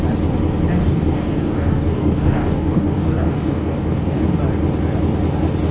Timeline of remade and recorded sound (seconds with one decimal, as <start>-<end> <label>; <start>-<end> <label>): 0.0-0.8 recorded; 0.8-4.2 remade; 4.2-5.7 recorded